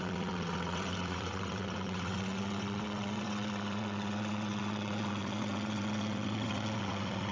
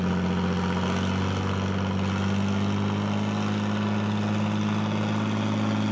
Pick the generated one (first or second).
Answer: first